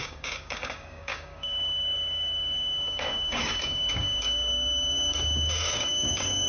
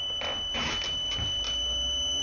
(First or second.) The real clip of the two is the second